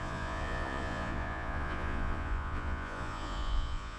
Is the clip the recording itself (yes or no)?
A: no